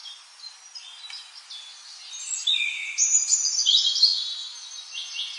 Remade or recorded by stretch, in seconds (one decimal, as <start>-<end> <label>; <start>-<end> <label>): 0.0-5.4 recorded